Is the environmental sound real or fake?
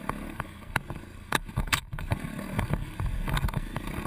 fake